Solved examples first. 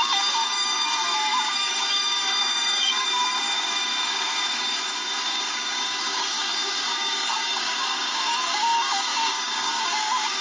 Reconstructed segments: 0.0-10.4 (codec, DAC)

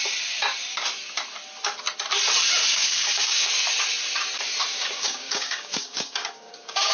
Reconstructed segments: 2.6-3.5 (codec, DAC); 4.7-6.9

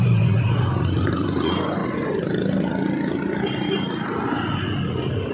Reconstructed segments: 0.0-1.8 (vocoder, Vocos)

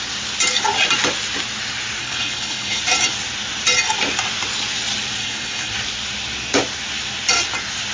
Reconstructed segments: 2.0-2.8 (codec, HILCodec); 5.2-5.7

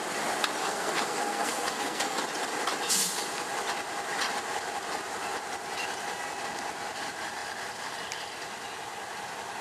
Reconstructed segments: 0.6-2.2 (codec, SNAC)